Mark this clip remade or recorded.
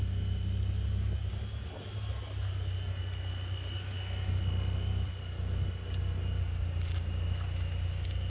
recorded